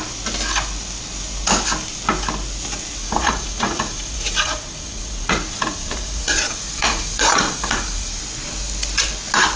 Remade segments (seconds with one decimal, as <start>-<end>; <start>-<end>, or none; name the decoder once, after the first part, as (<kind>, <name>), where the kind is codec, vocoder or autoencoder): 3.0-8.2 (vocoder, Vocos)